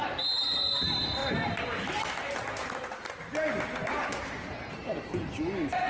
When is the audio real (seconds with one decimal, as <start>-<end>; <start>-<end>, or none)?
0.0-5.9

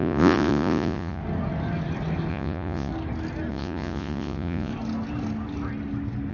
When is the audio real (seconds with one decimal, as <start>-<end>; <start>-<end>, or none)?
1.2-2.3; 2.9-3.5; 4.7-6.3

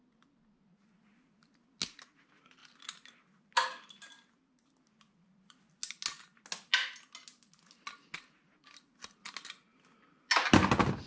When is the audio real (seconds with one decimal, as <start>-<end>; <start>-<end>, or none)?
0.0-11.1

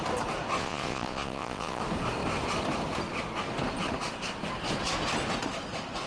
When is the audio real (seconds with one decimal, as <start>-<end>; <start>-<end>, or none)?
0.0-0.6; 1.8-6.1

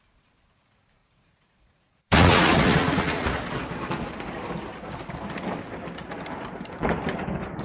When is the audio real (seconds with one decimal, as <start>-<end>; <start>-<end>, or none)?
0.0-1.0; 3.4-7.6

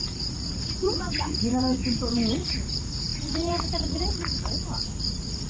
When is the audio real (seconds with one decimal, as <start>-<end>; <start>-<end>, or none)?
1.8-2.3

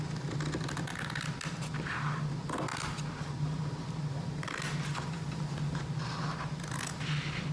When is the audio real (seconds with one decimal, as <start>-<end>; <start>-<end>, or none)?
0.0-7.5